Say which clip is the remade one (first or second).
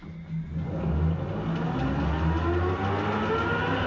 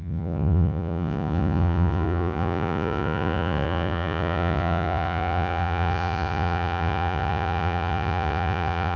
second